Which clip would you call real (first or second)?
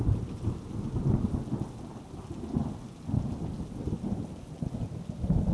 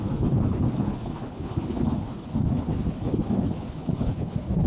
first